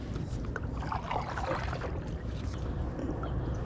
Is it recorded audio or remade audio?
recorded